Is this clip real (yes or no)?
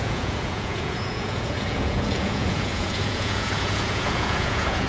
no